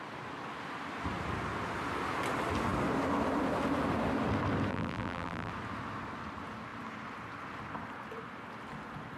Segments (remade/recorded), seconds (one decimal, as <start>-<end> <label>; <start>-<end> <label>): 0.0-4.7 recorded; 4.7-5.5 remade; 5.5-9.2 recorded